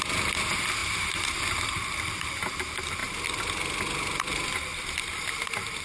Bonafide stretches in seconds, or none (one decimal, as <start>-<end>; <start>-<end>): 0.0-0.8; 1.4-3.0; 3.5-4.7

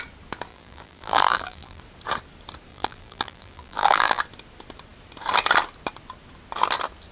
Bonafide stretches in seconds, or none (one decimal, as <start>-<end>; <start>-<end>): 0.0-0.5; 1.8-2.7; 4.2-7.1

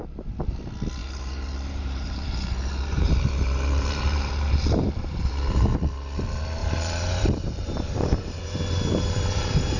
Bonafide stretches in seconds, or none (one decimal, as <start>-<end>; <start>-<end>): 0.0-1.0; 5.7-6.6

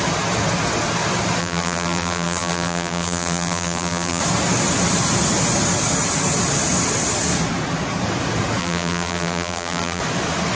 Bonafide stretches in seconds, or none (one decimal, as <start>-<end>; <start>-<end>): 0.0-1.4; 4.2-8.6; 10.0-10.5

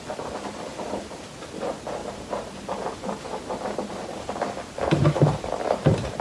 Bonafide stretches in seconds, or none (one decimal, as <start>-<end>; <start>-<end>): 0.0-2.0; 4.2-5.0

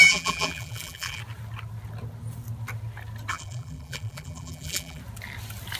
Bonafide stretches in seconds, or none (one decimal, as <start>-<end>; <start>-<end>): 1.2-3.3; 5.0-5.8

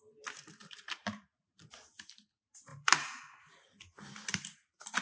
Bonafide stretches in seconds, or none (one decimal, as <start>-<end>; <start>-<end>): 0.0-0.6; 1.7-2.7; 3.2-5.0